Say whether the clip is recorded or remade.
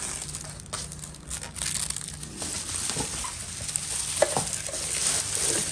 recorded